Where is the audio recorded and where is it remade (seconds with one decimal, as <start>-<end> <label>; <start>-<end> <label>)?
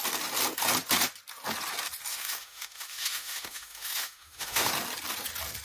0.0-2.1 recorded; 2.1-4.7 remade; 4.7-5.6 recorded